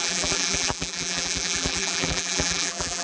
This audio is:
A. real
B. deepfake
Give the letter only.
B